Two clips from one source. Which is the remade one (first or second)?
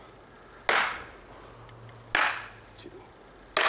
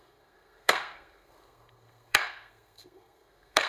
second